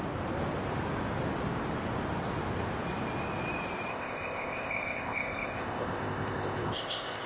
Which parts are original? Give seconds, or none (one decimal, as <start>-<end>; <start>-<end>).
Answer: 0.0-3.9